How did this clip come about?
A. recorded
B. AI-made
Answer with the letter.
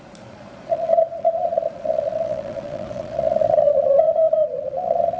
B